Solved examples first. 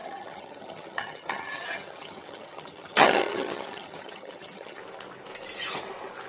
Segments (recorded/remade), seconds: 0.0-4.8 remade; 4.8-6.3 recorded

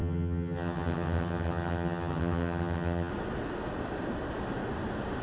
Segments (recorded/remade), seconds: 0.0-3.1 remade; 3.1-5.2 recorded